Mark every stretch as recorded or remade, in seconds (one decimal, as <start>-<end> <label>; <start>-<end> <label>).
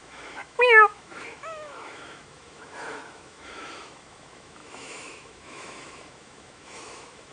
0.0-7.3 remade